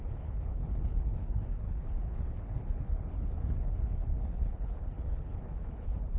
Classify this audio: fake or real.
fake